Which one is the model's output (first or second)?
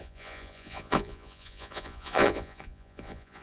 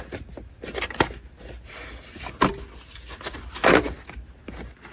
first